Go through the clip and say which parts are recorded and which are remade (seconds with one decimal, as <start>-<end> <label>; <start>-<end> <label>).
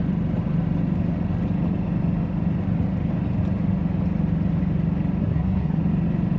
0.0-5.2 recorded; 5.2-5.8 remade; 5.8-6.4 recorded